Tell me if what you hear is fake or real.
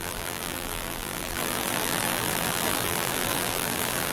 fake